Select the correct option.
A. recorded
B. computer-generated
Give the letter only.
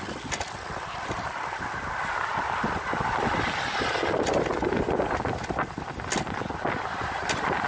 A